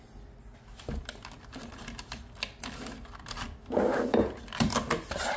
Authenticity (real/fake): real